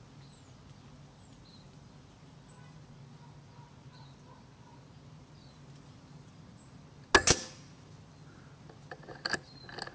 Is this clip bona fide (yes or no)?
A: yes